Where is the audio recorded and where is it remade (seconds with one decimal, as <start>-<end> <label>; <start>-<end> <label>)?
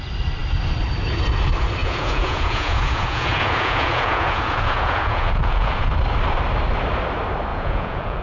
0.0-1.8 recorded; 1.8-5.9 remade; 5.9-7.5 recorded; 7.5-8.2 remade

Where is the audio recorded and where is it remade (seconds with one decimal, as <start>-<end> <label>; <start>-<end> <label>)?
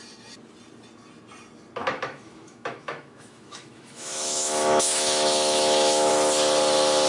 0.0-1.8 recorded; 1.8-6.1 remade; 6.1-7.1 recorded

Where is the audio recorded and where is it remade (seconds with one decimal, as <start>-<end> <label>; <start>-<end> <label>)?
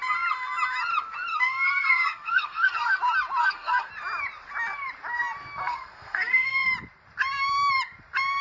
0.0-1.3 recorded; 1.3-3.0 remade; 3.0-3.4 recorded; 3.4-3.9 remade; 3.9-5.6 recorded; 5.6-6.7 remade; 6.7-8.4 recorded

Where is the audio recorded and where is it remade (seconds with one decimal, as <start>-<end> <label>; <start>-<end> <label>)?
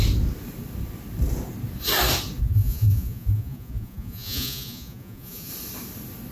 0.0-2.4 recorded; 2.4-5.5 remade; 5.5-6.3 recorded